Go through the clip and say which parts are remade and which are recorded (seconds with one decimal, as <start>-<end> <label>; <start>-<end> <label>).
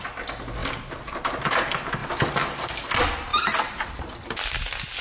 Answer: 0.0-0.6 recorded; 0.6-1.4 remade; 1.4-5.0 recorded